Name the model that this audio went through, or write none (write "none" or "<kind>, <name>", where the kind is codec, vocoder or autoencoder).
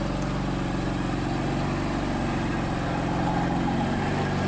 none